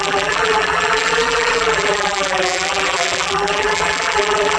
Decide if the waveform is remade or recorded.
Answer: remade